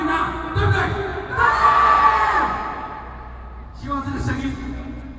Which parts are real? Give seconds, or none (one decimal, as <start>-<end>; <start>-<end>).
2.6-3.7